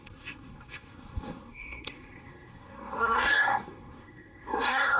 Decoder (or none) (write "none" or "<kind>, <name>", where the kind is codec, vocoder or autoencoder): codec, SNAC